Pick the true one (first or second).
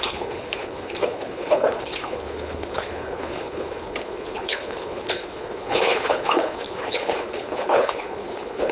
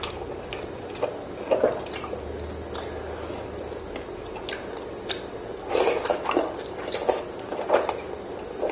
second